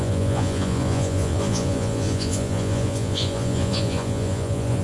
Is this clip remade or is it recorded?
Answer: remade